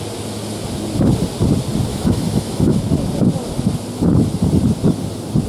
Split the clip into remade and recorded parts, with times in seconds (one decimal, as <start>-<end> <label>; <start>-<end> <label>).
0.0-1.9 recorded; 1.9-2.8 remade; 2.8-5.5 recorded